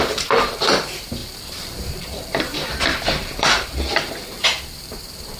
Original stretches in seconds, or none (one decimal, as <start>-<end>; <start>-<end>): none